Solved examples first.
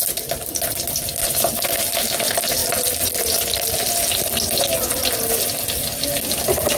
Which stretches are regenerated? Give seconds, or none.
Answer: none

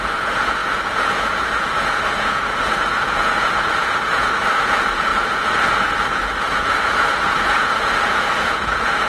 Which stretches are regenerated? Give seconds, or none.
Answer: 0.0-9.1 (vocoder, Vocos)